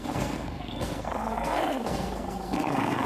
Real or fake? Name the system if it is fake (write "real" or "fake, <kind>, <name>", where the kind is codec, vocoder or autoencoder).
fake, codec, SNAC